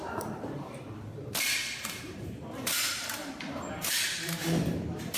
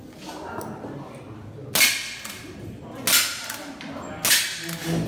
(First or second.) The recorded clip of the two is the second